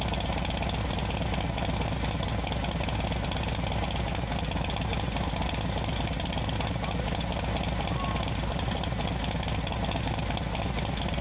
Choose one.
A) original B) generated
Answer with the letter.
A